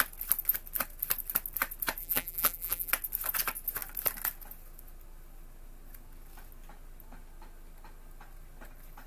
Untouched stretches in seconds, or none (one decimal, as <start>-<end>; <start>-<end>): 0.0-2.0; 2.9-9.1